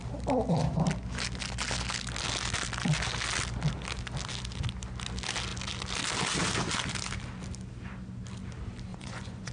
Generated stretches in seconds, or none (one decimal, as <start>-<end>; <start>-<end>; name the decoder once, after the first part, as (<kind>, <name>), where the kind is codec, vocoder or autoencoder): 8.9-9.5 (vocoder, Vocos)